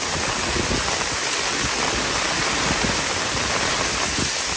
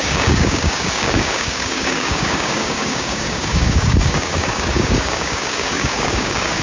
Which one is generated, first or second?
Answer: second